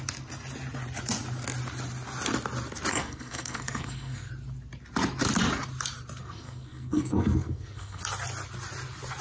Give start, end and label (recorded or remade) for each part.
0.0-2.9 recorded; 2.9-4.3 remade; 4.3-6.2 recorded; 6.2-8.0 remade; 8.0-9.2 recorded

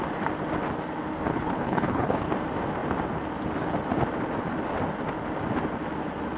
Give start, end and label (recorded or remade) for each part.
0.0-1.3 recorded; 1.3-2.3 remade; 2.3-6.4 recorded

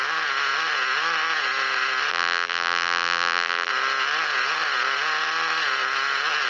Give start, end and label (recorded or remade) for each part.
0.0-2.1 recorded; 2.1-3.7 remade; 3.7-6.5 recorded